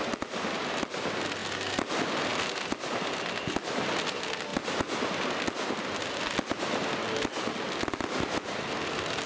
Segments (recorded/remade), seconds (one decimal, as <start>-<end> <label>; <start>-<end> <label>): 0.0-9.3 recorded